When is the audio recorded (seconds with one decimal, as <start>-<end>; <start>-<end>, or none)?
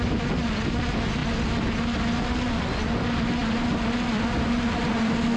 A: 0.0-5.4